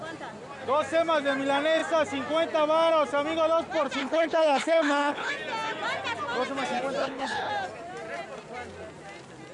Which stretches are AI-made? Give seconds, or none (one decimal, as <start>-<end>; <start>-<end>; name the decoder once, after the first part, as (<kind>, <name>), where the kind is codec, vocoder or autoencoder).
4.0-5.3 (codec, HILCodec); 7.0-7.5